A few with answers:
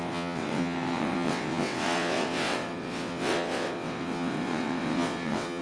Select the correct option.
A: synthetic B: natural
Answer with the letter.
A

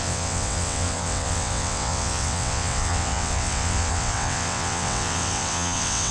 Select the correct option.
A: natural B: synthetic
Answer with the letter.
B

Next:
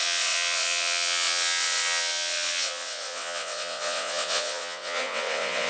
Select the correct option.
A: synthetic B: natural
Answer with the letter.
A